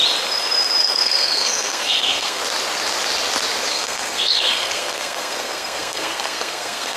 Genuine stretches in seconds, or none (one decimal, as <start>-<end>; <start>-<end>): 0.0-0.8; 2.4-3.7